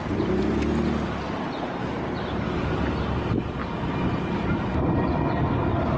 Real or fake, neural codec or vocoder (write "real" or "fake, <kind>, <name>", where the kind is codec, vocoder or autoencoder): real